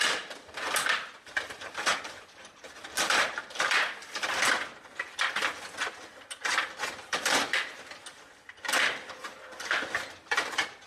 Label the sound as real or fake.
real